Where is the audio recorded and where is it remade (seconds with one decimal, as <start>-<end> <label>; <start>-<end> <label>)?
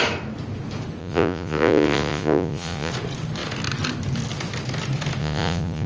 0.0-1.0 recorded; 1.0-2.9 remade; 2.9-5.2 recorded; 5.2-5.9 remade